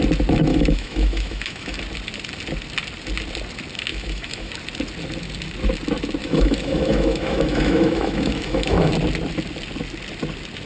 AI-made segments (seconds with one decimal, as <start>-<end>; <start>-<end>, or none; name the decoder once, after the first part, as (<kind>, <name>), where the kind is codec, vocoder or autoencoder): 0.5-1.8 (autoencoder, DAC-VAE); 3.9-4.5; 6.2-8.9